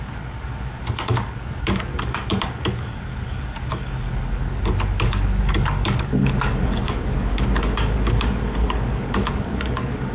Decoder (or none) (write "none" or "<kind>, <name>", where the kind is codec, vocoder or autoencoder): codec, DAC